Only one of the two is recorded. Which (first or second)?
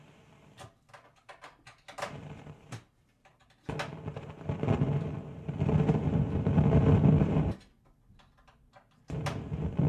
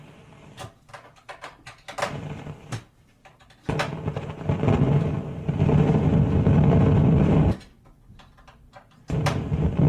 first